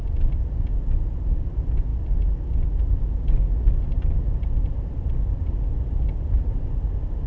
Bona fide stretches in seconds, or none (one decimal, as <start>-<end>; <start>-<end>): 0.0-7.3